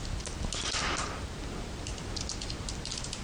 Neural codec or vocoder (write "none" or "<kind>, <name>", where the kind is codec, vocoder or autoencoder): none